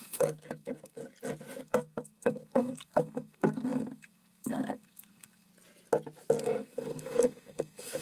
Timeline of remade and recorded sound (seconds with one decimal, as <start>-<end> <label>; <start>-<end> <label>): 0.0-1.0 remade; 1.0-1.6 recorded; 1.6-5.5 remade; 5.5-6.4 recorded; 6.4-8.0 remade